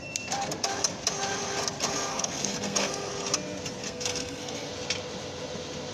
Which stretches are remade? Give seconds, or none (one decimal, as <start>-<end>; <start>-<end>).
2.1-3.1; 3.8-4.7